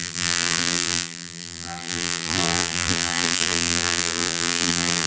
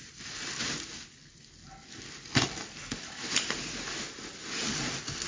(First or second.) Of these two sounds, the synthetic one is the first